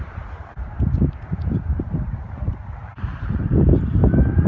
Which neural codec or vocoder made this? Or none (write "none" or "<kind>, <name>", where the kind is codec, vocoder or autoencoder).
vocoder, BigVGAN v2